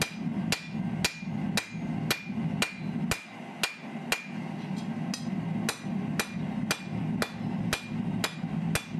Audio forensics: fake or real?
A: real